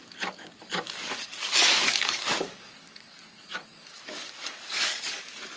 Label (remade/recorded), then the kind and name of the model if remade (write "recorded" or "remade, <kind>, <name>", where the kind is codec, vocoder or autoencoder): remade, codec, DAC